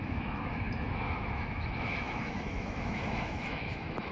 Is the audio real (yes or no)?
no